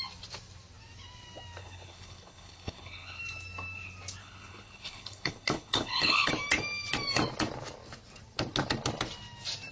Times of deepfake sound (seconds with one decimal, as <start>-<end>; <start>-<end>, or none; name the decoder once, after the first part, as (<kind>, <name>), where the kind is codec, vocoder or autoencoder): 1.6-3.2 (codec, HILCodec); 4.2-6.3